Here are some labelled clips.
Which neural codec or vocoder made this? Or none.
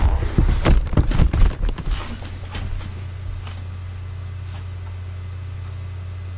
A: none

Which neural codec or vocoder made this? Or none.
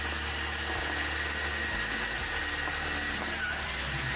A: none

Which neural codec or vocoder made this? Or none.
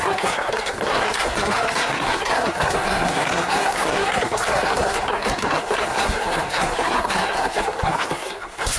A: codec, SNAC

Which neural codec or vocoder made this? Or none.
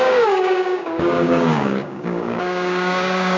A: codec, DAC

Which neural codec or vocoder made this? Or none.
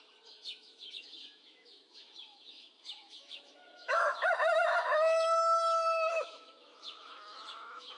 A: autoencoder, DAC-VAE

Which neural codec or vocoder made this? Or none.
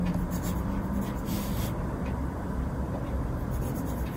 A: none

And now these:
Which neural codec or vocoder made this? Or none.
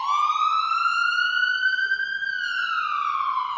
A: none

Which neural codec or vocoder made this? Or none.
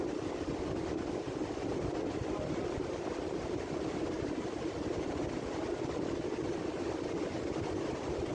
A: none